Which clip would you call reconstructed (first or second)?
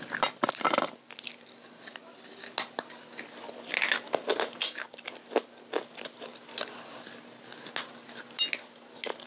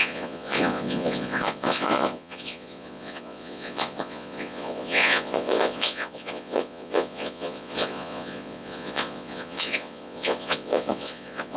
second